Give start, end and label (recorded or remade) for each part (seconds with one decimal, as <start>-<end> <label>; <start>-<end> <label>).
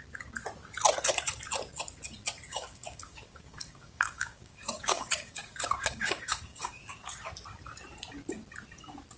0.0-2.5 recorded; 2.5-7.3 remade; 7.3-9.2 recorded